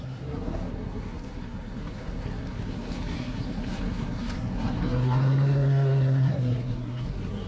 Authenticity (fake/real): fake